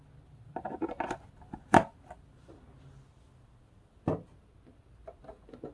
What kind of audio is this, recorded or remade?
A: recorded